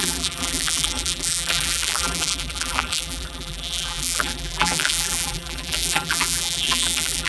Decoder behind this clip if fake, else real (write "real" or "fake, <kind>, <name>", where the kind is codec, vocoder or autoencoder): fake, vocoder, BigVGAN v2